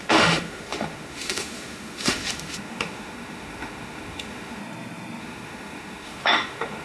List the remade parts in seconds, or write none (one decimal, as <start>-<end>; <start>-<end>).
0.0-4.6; 5.2-6.8